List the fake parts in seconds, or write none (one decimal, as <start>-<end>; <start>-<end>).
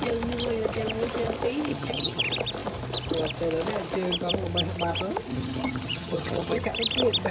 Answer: 1.7-2.2; 5.3-6.6